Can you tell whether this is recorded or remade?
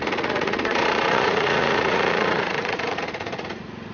remade